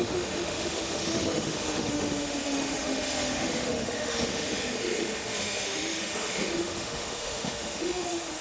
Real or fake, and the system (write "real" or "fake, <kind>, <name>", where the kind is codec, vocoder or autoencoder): fake, autoencoder, DAC-VAE